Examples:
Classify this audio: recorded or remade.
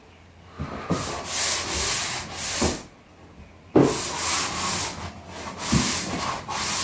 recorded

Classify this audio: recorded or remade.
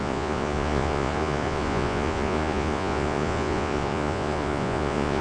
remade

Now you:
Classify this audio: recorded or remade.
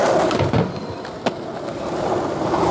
recorded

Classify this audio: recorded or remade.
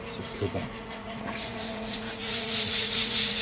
remade